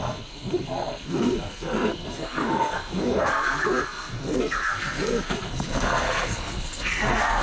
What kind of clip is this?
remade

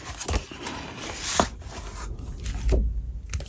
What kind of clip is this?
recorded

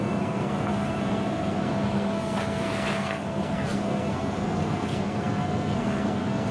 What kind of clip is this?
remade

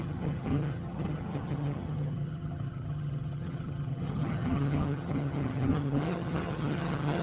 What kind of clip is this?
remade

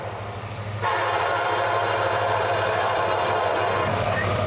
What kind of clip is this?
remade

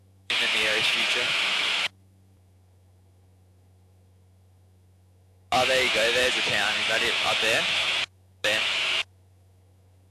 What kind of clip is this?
remade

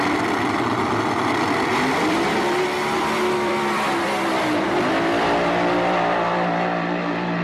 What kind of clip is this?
remade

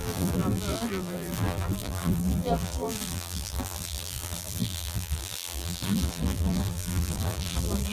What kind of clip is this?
remade